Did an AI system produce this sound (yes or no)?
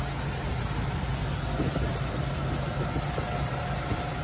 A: no